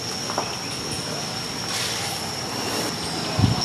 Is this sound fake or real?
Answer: real